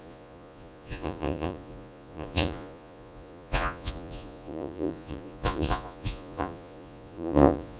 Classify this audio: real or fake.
fake